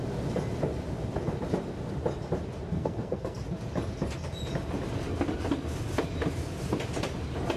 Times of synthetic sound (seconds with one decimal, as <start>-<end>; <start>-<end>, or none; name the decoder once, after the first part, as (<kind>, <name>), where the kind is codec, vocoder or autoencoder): 2.7-3.4 (codec, SNAC)